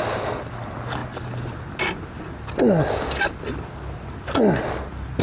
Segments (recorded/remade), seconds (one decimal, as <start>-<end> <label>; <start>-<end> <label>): 0.0-5.2 recorded